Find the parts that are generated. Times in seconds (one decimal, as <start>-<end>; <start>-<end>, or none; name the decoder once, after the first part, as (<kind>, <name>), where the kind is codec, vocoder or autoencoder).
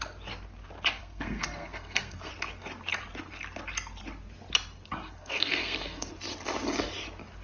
1.0-2.3 (codec, SNAC); 5.0-6.1